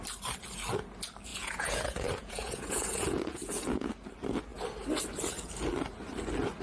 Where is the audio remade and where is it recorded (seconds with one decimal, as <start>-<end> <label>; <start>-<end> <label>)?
0.0-1.3 recorded; 1.3-3.9 remade; 3.9-6.6 recorded